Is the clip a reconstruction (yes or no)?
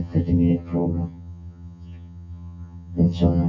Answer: yes